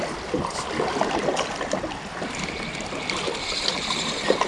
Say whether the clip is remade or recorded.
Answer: recorded